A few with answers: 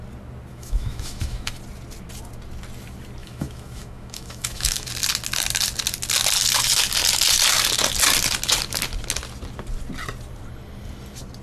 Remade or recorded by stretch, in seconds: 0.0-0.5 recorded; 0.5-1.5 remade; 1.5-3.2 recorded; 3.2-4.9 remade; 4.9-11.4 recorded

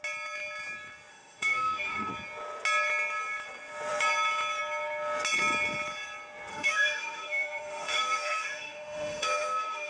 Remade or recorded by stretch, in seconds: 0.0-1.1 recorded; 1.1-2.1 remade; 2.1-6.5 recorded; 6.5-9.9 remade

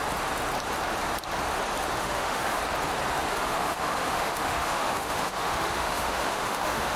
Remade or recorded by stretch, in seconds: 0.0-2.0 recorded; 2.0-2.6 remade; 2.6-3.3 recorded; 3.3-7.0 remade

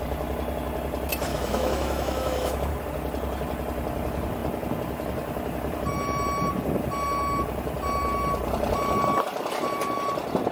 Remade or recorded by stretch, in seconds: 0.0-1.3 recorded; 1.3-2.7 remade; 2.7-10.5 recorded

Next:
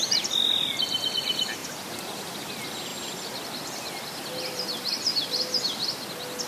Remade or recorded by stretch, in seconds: 0.0-6.5 recorded